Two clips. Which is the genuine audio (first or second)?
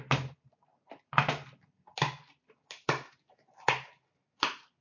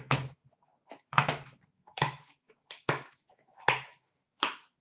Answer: first